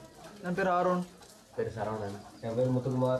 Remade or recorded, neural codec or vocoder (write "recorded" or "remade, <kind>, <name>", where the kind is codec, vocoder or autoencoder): recorded